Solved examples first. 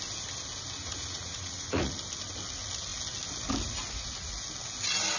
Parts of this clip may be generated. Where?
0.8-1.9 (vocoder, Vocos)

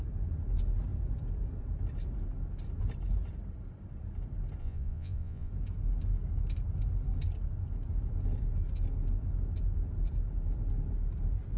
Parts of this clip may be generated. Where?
4.6-5.5 (vocoder, Vocos)

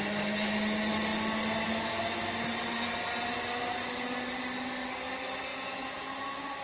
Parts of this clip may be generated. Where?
5.5-6.1 (vocoder, Vocos)

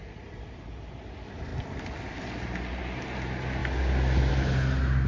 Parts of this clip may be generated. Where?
none

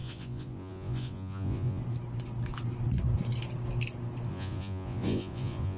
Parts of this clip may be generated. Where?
0.0-1.8 (vocoder, Vocos); 4.3-5.8

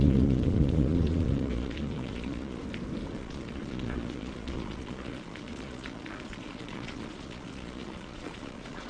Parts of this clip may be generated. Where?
0.0-2.6 (vocoder, Vocos); 3.1-8.9

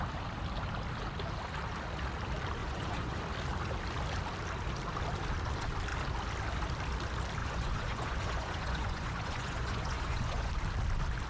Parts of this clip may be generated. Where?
2.6-3.2 (vocoder, Vocos); 7.4-10.5

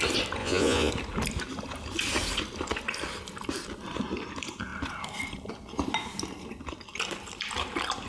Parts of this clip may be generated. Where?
0.4-0.9 (vocoder, Vocos)